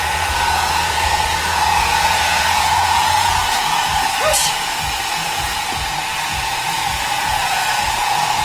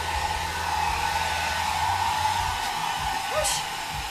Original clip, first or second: second